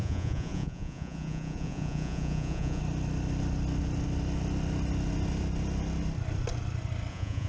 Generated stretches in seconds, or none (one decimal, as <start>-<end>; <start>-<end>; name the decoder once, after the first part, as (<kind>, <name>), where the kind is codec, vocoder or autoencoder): 0.0-2.8 (vocoder, Vocos); 7.1-7.5